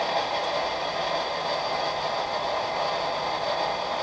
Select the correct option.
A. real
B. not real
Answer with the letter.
A